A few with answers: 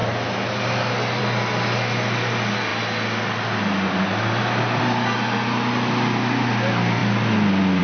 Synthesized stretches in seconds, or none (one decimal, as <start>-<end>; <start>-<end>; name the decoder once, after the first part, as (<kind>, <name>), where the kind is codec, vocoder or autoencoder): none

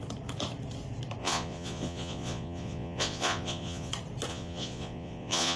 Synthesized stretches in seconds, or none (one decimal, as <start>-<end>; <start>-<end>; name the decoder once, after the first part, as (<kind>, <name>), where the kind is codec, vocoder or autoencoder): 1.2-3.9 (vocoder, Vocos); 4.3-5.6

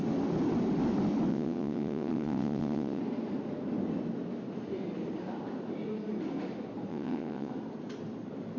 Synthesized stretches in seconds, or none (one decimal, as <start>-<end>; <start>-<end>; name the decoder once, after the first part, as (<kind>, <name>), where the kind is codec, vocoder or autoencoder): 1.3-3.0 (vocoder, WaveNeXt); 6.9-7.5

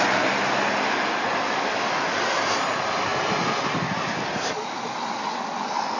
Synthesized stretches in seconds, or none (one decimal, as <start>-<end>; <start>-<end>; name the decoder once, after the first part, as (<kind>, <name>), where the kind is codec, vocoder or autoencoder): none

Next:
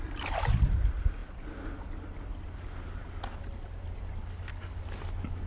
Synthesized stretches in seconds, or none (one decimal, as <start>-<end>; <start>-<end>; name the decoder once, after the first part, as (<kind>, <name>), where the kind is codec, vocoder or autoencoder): none